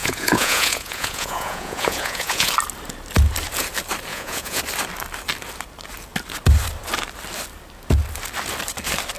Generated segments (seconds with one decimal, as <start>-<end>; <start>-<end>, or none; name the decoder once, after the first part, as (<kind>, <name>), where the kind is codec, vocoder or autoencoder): 0.0-2.5 (vocoder, Vocos); 4.1-4.6